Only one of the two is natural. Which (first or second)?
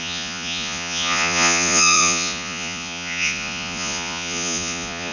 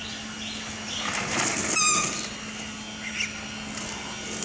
second